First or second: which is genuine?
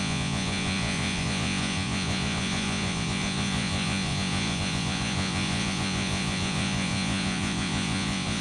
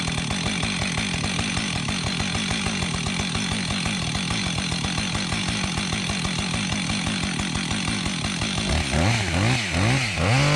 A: second